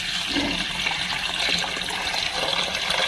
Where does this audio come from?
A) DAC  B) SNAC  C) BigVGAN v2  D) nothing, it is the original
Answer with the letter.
D